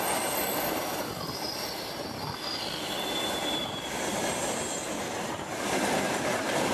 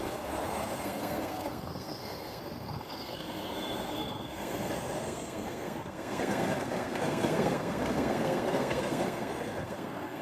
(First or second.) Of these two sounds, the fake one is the second